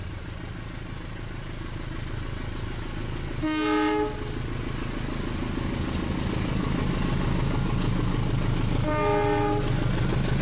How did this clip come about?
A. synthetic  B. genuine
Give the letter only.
B